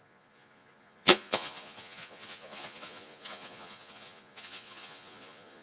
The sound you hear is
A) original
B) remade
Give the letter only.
B